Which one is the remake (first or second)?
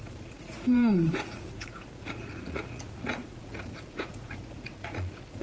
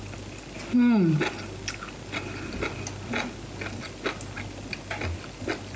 first